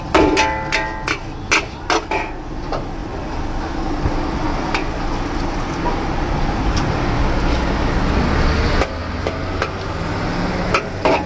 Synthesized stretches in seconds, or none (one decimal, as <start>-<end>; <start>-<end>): none